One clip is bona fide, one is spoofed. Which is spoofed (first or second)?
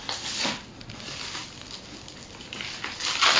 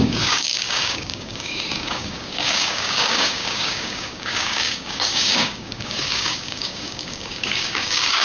second